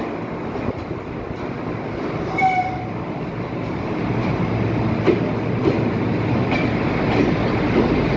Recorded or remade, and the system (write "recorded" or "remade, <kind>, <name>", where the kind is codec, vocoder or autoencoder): recorded